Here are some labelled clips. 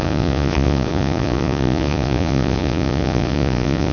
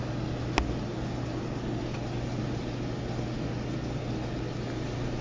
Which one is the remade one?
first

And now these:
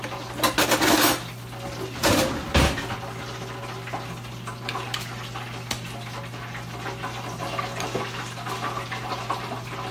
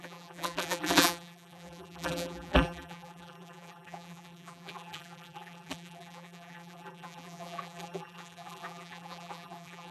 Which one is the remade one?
second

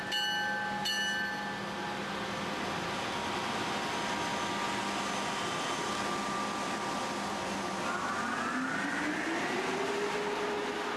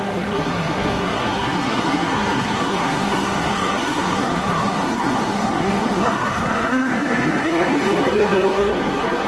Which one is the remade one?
second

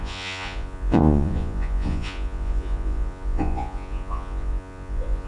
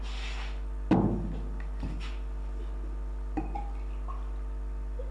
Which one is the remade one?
first